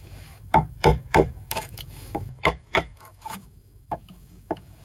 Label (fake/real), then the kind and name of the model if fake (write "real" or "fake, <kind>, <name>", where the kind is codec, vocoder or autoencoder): fake, codec, DAC